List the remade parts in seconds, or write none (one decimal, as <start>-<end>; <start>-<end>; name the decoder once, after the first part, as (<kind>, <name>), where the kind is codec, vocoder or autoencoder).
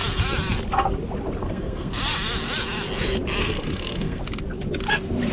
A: 1.4-1.9 (codec, SNAC); 3.4-4.2